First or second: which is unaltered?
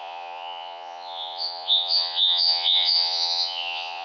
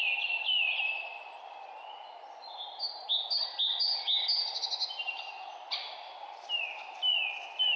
second